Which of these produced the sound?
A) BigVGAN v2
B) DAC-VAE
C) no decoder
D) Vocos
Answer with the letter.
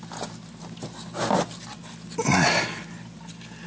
C